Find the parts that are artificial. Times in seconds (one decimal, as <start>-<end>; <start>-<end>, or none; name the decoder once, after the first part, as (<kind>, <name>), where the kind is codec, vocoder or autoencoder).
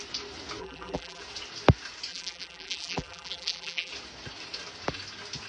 0.6-1.2 (vocoder, BigVGAN v2); 2.1-3.9